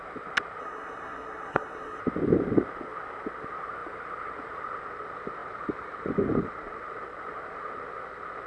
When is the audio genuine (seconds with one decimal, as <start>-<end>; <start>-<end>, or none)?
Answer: 0.0-0.6; 2.0-8.5